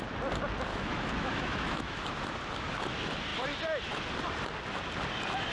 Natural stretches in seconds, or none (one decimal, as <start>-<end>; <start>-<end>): 0.0-0.7; 2.1-5.5